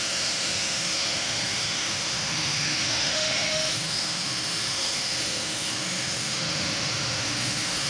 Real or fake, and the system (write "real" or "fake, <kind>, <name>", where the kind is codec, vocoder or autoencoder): fake, autoencoder, DAC-VAE